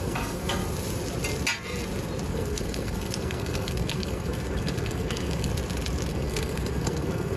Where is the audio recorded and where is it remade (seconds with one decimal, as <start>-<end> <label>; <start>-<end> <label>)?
0.0-0.6 remade; 0.6-2.3 recorded; 2.3-5.5 remade; 5.5-6.1 recorded; 6.1-7.4 remade